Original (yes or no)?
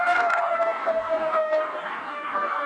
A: no